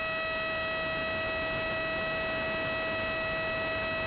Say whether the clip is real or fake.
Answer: real